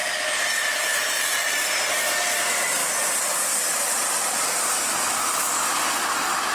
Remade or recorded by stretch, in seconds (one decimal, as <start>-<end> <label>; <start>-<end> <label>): 0.0-0.5 remade; 0.5-2.8 recorded; 2.8-4.6 remade; 4.6-6.5 recorded